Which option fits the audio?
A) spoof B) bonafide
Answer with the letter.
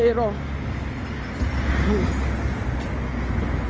B